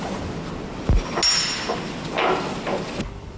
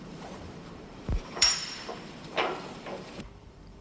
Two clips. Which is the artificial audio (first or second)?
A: second